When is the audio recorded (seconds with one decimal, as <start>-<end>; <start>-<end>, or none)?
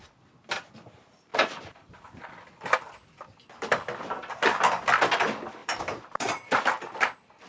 0.0-1.3; 1.9-5.6; 6.6-7.5